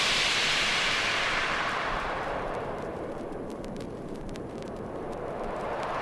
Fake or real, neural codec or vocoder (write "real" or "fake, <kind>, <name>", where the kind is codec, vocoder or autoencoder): fake, vocoder, BigVGAN v2